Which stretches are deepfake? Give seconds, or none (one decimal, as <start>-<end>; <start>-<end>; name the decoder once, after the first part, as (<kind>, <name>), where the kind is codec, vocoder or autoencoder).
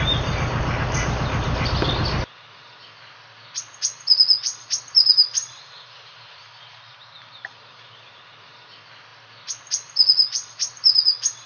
5.1-8.2 (vocoder, BigVGAN v2)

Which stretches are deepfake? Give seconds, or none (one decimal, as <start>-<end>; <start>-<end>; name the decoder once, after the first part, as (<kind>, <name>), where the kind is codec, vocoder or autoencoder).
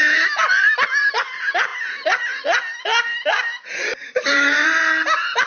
4.0-4.8 (vocoder, BigVGAN v2)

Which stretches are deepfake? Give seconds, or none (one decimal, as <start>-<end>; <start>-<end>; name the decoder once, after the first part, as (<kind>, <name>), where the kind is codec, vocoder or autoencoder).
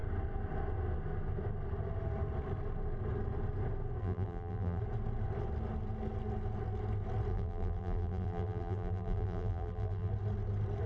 4.0-4.8 (vocoder, BigVGAN v2); 7.3-10.1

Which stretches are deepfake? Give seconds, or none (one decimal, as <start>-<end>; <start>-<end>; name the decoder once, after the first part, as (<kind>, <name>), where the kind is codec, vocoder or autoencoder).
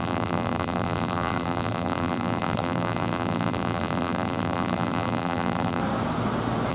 0.0-5.8 (vocoder, BigVGAN v2)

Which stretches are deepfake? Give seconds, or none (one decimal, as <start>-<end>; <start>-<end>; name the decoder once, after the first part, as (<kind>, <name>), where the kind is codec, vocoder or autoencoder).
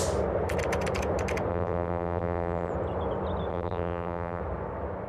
1.5-2.7 (vocoder, BigVGAN v2); 3.5-4.4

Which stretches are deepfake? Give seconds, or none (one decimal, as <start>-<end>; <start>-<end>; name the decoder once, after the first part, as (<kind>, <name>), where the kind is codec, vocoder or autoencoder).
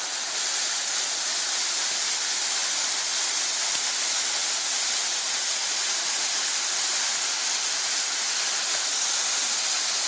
none